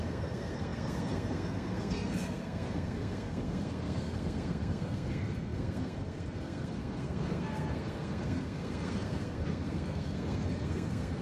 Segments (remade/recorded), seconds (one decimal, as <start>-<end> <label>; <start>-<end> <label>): 0.0-11.2 remade